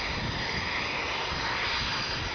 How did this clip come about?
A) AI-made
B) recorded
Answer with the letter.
B